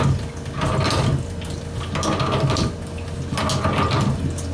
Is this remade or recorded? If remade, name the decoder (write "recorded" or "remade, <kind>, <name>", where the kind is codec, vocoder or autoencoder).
recorded